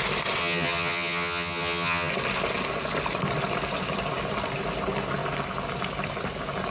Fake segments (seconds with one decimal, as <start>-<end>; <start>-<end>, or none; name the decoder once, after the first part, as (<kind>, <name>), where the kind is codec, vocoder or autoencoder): 0.4-2.1 (vocoder, HiFi-GAN)